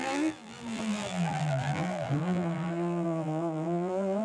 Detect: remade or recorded remade